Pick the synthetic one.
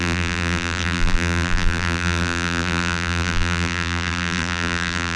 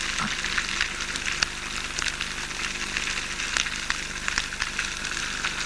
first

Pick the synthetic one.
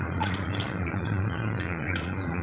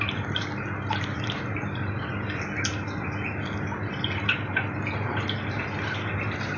first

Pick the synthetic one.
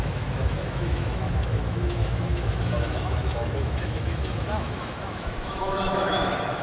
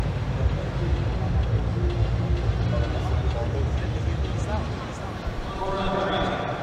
first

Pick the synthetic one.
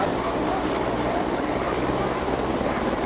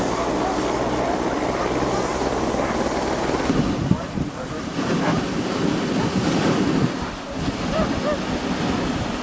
first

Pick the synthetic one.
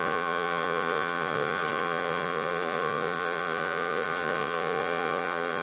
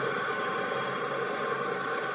first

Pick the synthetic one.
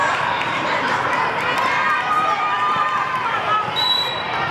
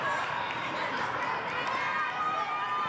first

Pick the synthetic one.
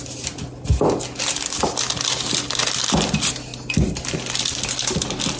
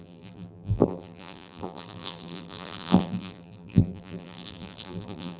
second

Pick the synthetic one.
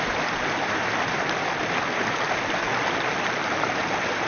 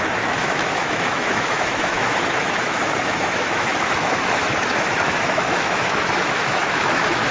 second